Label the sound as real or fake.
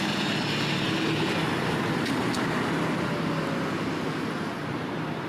real